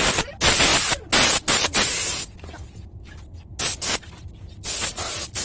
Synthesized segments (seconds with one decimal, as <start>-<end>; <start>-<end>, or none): none